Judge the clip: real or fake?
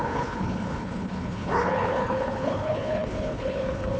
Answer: fake